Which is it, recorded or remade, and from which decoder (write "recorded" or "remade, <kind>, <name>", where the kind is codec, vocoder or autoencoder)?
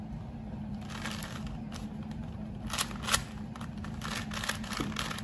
recorded